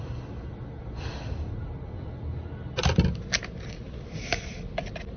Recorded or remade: recorded